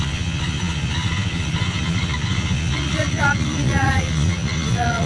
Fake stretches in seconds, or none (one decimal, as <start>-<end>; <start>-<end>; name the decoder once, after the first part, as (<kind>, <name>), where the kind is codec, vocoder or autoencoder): 0.0-5.1 (vocoder, Vocos)